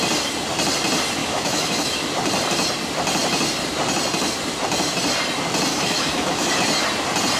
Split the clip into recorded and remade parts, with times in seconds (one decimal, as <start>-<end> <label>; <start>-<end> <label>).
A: 0.0-1.2 recorded; 1.2-2.1 remade; 2.1-5.7 recorded; 5.7-6.5 remade; 6.5-7.4 recorded